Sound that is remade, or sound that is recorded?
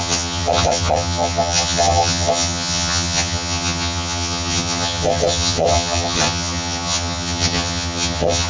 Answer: remade